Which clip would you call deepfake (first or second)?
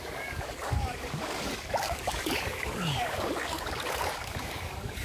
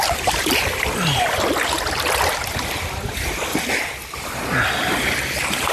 first